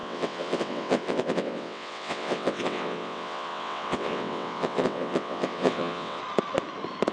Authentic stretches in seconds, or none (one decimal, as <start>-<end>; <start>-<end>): 6.2-7.1